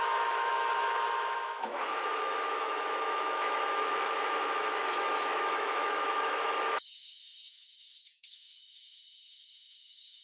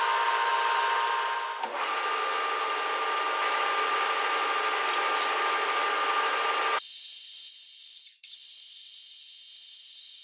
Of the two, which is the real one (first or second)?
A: second